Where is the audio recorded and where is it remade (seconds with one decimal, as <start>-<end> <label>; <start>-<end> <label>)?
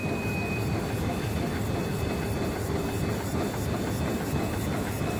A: 0.0-5.2 recorded